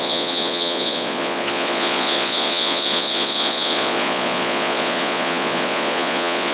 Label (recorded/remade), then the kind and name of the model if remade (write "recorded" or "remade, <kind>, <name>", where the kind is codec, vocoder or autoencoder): remade, vocoder, Vocos